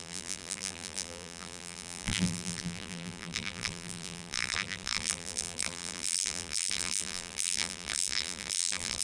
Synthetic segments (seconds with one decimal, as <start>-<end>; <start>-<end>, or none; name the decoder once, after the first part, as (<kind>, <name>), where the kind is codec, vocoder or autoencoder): 0.0-9.0 (vocoder, BigVGAN v2)